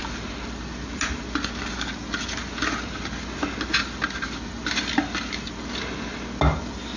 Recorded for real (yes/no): yes